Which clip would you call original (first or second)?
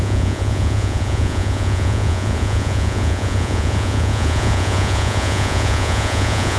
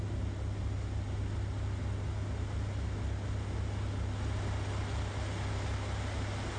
second